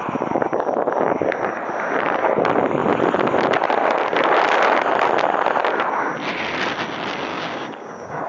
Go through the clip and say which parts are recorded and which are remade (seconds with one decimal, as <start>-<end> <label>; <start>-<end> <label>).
0.0-7.3 recorded; 7.3-8.3 remade